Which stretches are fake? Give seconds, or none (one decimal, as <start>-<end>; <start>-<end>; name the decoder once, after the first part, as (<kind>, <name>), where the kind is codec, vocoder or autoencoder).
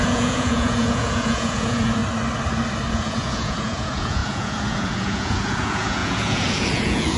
0.0-2.0 (vocoder, Vocos); 2.9-7.2